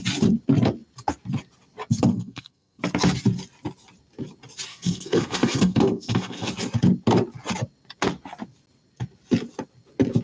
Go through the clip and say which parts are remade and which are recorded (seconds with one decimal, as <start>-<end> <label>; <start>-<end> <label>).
0.0-2.1 recorded; 2.1-2.8 remade; 2.8-4.7 recorded; 4.7-6.5 remade; 6.5-10.2 recorded